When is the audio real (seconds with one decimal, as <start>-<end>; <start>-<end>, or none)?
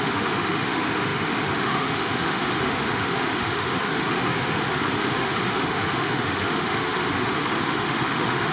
none